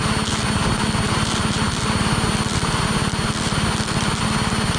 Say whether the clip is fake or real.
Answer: real